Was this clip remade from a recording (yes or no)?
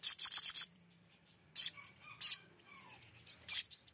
no